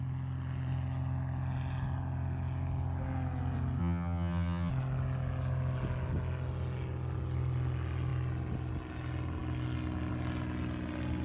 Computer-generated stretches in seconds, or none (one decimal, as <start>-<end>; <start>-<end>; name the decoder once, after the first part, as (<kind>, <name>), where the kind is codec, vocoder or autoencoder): 3.8-4.7 (vocoder, HiFi-GAN)